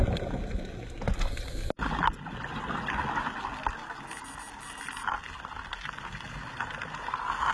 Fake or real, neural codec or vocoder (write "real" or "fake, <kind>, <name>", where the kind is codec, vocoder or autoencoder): real